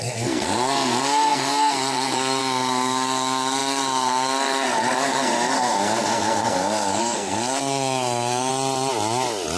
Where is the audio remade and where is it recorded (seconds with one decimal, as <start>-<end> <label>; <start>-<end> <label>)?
0.0-8.5 remade; 8.5-9.6 recorded